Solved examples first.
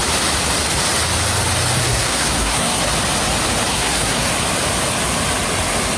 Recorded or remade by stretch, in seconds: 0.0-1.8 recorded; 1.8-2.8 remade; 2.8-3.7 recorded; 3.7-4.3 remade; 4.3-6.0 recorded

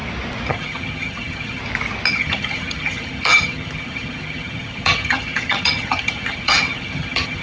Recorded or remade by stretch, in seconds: 0.0-0.5 recorded; 0.5-1.6 remade; 1.6-2.1 recorded; 2.1-7.4 remade

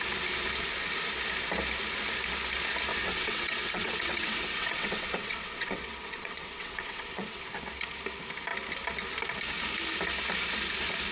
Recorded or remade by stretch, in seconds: 0.0-2.9 recorded; 2.9-7.4 remade; 7.4-11.1 recorded

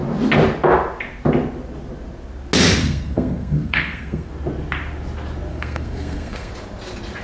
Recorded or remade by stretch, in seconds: 0.0-2.8 recorded; 2.8-4.3 remade; 4.3-5.5 recorded; 5.5-6.5 remade; 6.5-7.2 recorded

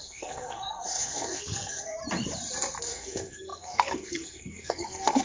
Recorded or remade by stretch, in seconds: 0.0-2.0 remade; 2.0-2.8 recorded; 2.8-5.2 remade

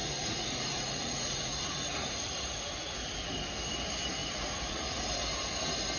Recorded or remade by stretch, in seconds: 0.0-3.0 remade; 3.0-4.2 recorded; 4.2-5.0 remade; 5.0-6.0 recorded

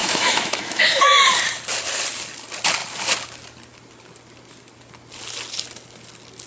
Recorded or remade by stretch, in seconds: 0.0-1.3 remade; 1.3-6.5 recorded

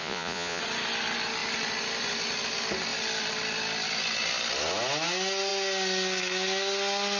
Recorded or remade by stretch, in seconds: 0.0-0.6 remade; 0.6-7.2 recorded